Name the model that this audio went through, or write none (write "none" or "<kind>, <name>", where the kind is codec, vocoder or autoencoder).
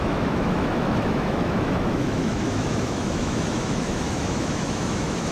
autoencoder, DAC-VAE